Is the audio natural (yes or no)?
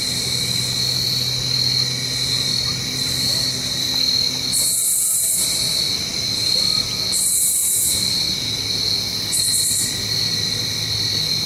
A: yes